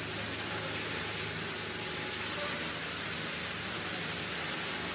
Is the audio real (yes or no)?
yes